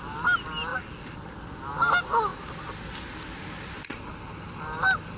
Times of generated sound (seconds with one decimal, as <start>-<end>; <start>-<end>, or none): none